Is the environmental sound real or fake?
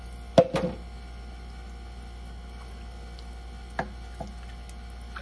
real